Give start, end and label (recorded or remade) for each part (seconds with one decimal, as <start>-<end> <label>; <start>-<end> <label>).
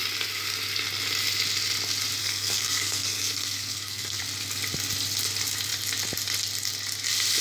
0.0-2.2 recorded; 2.2-4.2 remade; 4.2-7.4 recorded